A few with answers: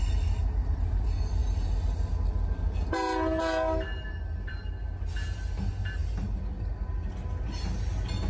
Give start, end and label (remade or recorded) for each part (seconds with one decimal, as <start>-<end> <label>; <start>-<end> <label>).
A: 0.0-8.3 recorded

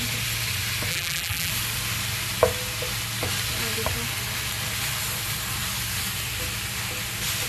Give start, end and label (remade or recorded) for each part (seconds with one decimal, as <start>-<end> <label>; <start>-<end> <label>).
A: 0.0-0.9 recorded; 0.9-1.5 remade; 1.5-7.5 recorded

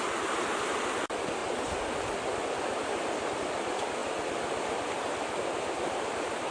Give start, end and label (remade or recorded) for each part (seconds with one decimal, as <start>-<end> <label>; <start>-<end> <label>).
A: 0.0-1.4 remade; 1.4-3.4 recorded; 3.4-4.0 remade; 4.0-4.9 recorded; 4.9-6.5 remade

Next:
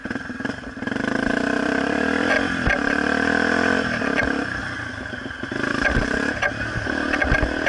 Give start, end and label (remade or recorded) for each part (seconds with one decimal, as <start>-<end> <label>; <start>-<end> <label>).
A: 0.0-4.6 remade; 4.6-7.7 recorded

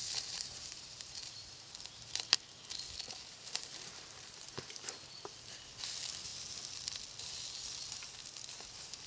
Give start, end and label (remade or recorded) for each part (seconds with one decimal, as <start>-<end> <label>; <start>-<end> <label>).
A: 0.0-4.9 remade; 4.9-9.1 recorded

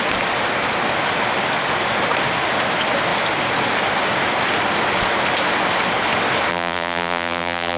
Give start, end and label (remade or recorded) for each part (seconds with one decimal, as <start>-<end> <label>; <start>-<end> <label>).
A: 0.0-6.5 recorded; 6.5-7.8 remade